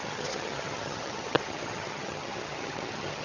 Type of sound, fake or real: fake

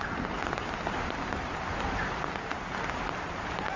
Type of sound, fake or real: real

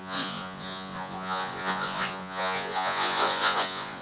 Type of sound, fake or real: fake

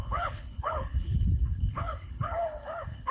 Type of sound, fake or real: fake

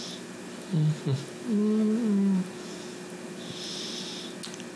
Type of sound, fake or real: real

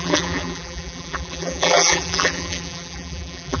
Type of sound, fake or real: fake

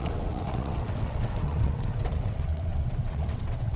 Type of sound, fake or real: fake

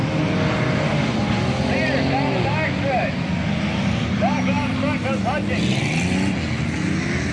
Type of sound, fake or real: real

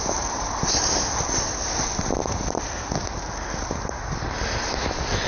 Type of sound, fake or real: real